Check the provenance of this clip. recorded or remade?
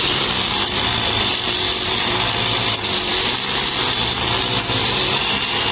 recorded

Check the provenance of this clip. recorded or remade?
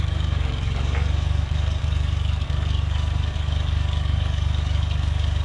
remade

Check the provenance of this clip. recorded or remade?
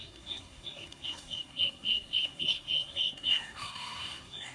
remade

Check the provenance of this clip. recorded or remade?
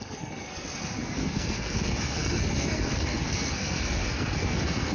remade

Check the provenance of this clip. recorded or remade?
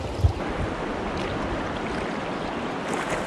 recorded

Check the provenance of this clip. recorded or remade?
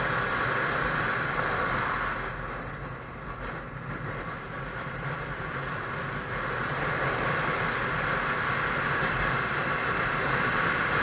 recorded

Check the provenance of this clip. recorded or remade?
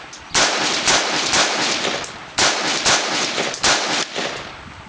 remade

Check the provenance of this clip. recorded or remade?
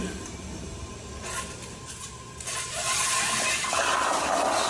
recorded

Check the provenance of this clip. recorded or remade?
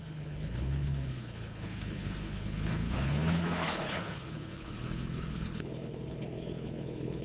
remade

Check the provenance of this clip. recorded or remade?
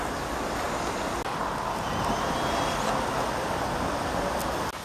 recorded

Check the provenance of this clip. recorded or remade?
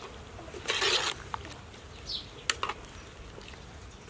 recorded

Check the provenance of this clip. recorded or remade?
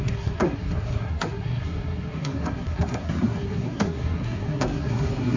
remade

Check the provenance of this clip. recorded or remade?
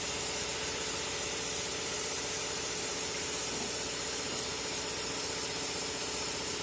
remade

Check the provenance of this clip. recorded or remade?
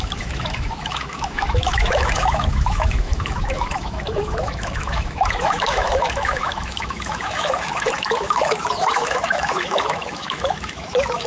remade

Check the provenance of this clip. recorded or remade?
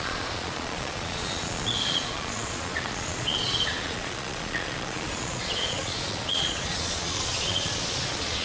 remade